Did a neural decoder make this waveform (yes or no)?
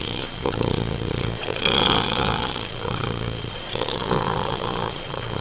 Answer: yes